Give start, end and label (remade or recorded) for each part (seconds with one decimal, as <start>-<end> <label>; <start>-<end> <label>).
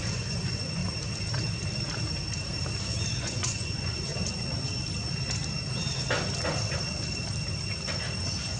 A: 0.0-0.8 remade; 0.8-3.2 recorded; 3.2-4.1 remade; 4.1-8.2 recorded; 8.2-8.6 remade